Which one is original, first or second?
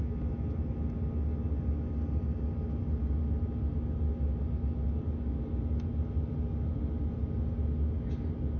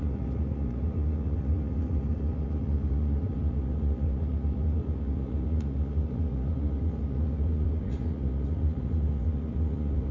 first